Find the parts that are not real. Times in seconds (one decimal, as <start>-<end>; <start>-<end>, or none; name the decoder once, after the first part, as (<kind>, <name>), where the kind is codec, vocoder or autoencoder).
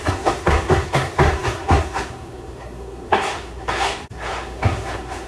0.0-5.3 (codec, SNAC)